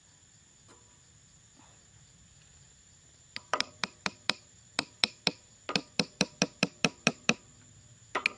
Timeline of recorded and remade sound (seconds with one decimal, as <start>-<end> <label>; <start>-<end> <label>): 0.0-2.5 recorded; 2.5-7.4 remade; 7.4-8.4 recorded